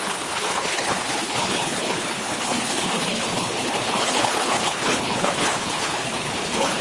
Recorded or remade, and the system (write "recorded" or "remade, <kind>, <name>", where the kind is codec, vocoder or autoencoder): remade, codec, HILCodec